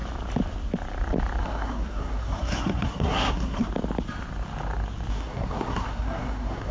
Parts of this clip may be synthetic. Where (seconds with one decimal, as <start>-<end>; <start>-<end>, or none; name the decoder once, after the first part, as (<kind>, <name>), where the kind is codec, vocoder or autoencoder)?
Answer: 1.4-3.7 (codec, SNAC); 5.1-6.7